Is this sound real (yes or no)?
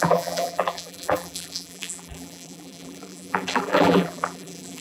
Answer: no